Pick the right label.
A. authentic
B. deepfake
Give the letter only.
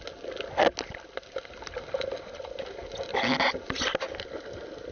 A